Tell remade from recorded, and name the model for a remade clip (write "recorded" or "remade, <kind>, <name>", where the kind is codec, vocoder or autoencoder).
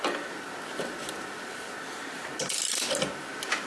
recorded